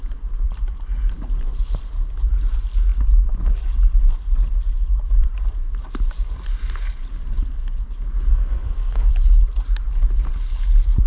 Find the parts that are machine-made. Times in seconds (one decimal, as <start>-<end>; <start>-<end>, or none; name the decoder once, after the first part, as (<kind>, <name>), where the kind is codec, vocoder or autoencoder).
8.3-9.1 (codec, SNAC)